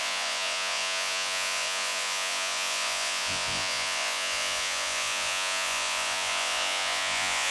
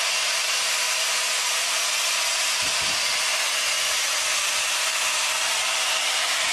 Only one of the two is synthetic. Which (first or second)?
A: first